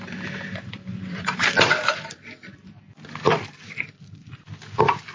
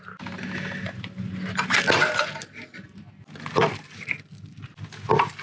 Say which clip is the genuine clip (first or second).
second